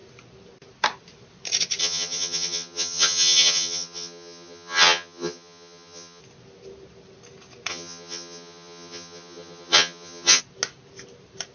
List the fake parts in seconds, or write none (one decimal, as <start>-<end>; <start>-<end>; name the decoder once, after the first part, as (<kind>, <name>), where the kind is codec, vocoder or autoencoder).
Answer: 1.8-6.2 (vocoder, HiFi-GAN); 7.7-10.4